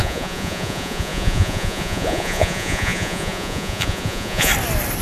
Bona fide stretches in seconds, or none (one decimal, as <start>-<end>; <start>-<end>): 4.5-5.0